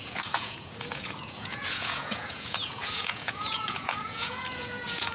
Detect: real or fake fake